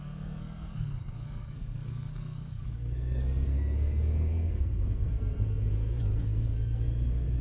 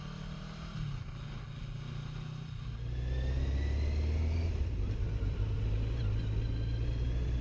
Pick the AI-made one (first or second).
first